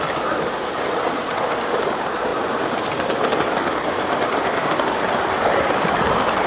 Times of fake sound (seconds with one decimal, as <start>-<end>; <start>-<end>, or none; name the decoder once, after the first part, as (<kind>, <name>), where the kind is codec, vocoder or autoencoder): none

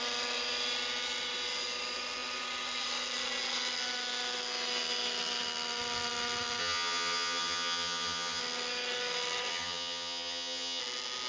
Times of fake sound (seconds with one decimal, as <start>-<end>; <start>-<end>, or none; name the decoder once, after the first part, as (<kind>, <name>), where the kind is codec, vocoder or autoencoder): 6.6-8.4 (vocoder, HiFi-GAN); 9.5-10.8

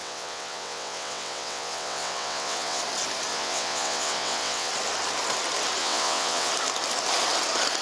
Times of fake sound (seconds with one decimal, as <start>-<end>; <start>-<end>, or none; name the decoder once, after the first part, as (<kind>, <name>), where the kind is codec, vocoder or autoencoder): 0.0-2.8 (vocoder, WaveNeXt); 3.3-4.7; 5.8-6.5